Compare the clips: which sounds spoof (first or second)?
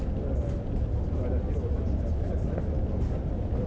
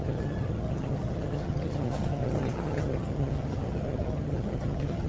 second